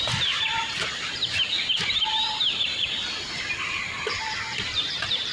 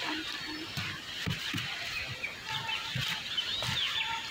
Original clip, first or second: second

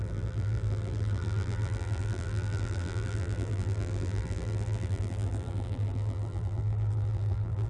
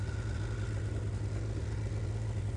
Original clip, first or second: second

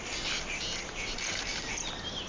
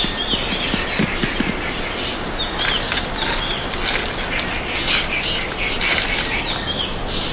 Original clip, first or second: second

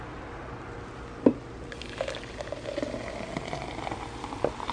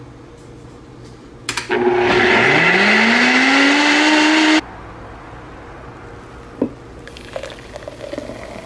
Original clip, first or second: second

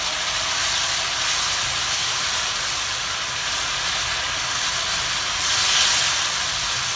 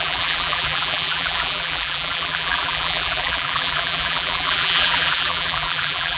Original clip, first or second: first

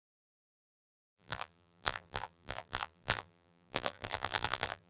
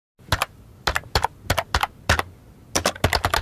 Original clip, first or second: second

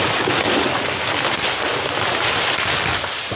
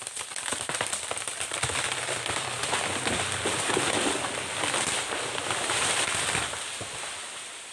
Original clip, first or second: first